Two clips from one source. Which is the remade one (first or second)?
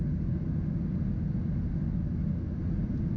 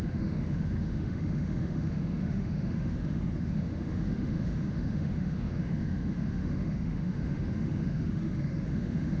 second